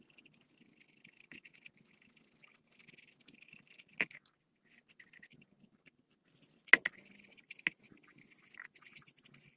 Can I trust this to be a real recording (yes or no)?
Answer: yes